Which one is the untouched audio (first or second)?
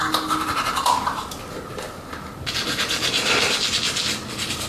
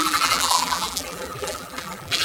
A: first